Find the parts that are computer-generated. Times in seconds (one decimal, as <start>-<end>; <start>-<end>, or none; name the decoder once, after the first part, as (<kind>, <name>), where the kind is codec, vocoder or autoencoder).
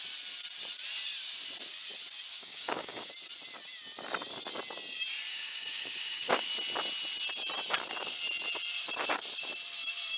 2.3-3.1 (codec, DAC); 5.3-6.5